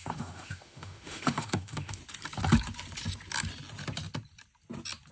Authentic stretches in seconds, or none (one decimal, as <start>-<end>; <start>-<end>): 2.0-5.1